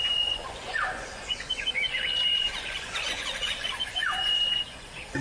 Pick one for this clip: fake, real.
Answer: fake